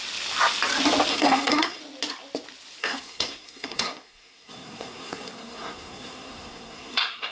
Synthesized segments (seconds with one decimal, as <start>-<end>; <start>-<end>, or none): 1.1-1.8; 2.8-7.3